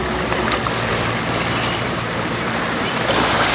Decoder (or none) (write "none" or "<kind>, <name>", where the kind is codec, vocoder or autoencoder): none